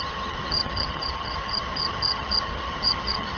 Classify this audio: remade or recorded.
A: remade